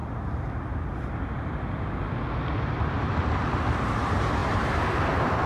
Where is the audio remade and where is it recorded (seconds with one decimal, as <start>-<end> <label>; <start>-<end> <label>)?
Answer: 0.0-3.0 recorded; 3.0-5.5 remade